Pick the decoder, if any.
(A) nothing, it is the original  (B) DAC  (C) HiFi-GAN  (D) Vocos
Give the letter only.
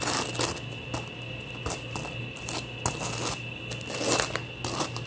A